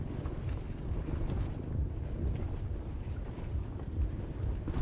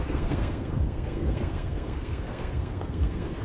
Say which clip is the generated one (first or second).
second